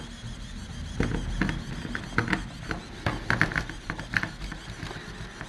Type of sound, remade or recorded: recorded